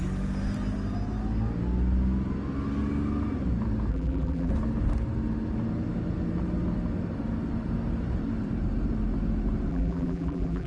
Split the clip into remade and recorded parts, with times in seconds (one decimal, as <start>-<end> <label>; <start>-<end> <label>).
0.0-3.9 recorded; 3.9-4.5 remade; 4.5-9.7 recorded; 9.7-10.7 remade